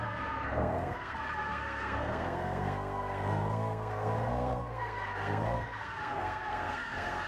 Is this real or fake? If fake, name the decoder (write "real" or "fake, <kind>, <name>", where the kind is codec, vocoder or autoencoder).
fake, codec, SNAC